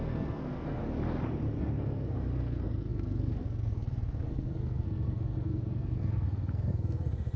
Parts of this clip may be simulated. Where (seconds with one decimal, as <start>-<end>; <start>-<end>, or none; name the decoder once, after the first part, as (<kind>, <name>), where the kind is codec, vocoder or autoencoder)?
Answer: 0.0-0.8 (codec, SNAC); 1.6-7.4